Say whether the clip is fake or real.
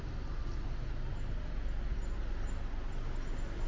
real